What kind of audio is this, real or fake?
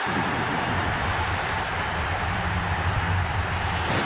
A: fake